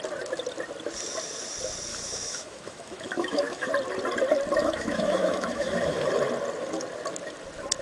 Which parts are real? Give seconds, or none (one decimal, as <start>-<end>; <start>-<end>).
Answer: 0.0-1.9; 3.7-4.6; 6.1-7.8